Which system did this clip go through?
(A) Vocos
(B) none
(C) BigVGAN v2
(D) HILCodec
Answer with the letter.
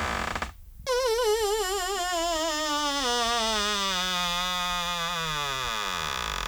B